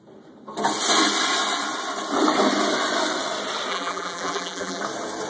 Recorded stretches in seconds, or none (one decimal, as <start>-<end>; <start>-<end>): 0.0-3.7; 4.8-5.3

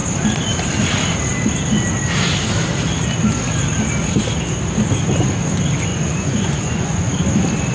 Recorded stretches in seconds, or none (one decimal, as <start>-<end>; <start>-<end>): 0.0-5.9; 7.1-7.7

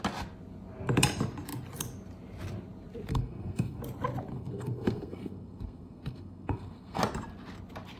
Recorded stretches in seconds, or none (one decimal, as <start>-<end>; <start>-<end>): 0.0-3.1; 3.8-4.3; 7.0-8.0

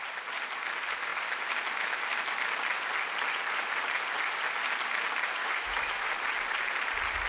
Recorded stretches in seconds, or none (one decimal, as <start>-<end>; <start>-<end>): 0.0-5.4; 6.1-7.3

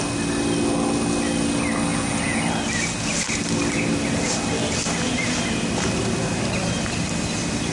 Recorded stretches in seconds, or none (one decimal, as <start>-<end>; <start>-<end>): 0.0-1.9; 2.4-7.7

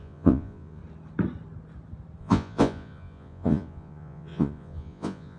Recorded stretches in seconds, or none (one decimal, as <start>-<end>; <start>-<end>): 0.8-2.2

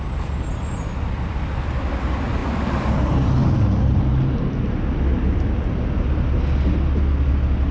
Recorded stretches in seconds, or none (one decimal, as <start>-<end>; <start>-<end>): 0.0-7.7

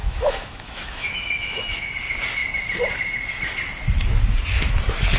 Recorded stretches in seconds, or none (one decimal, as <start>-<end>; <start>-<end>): 1.9-5.2